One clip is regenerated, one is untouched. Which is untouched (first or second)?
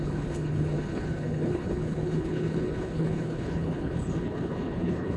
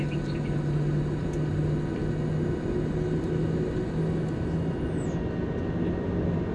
second